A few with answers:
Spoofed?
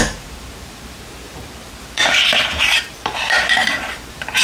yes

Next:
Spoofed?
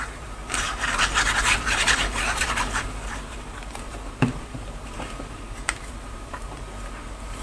yes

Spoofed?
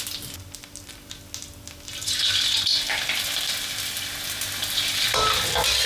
no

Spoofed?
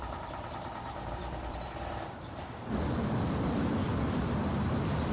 yes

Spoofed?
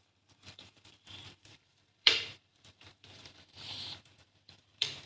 yes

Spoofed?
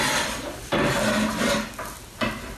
no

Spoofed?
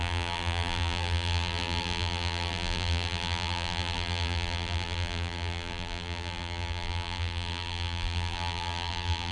yes